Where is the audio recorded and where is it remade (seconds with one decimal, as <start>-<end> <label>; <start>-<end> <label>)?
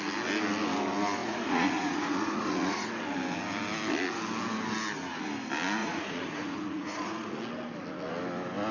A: 0.0-1.2 recorded; 1.2-3.0 remade; 3.0-5.8 recorded; 5.8-7.4 remade; 7.4-8.7 recorded